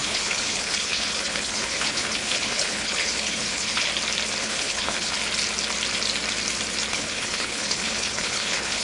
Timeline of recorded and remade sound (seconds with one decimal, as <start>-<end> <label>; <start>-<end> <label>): 0.0-3.9 remade; 3.9-4.4 recorded; 4.4-5.2 remade; 5.2-6.9 recorded; 6.9-8.8 remade